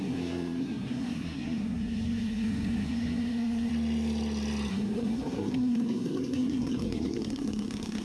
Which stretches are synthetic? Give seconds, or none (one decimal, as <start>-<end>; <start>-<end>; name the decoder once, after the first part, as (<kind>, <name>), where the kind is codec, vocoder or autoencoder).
0.0-3.7 (codec, SNAC); 4.7-8.0